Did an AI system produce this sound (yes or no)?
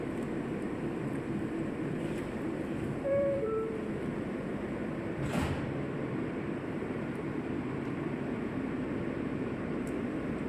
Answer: yes